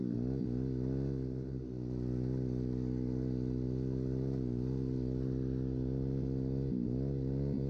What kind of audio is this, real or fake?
real